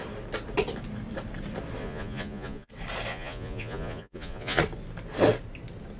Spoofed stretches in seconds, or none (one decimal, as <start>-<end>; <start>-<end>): 1.8-2.7; 3.1-4.6